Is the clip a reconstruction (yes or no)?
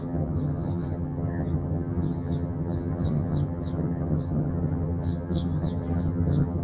yes